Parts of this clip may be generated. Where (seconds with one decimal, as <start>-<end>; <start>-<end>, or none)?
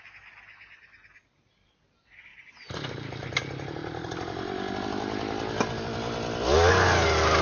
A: none